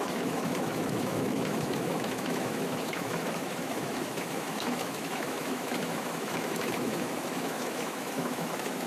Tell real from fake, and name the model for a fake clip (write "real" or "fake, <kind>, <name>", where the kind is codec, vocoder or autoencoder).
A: fake, autoencoder, DAC-VAE